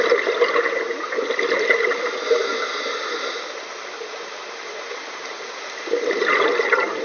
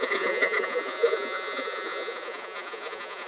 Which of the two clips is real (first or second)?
first